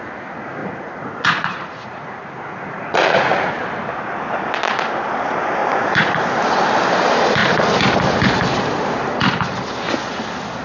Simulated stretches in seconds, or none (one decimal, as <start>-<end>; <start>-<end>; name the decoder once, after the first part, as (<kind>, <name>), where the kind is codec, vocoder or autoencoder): 0.6-3.5 (vocoder, Vocos); 5.6-6.2